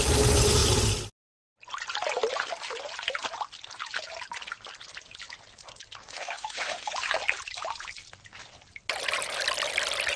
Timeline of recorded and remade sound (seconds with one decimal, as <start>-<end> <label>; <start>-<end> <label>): 0.0-6.0 recorded; 6.0-6.9 remade; 6.9-10.2 recorded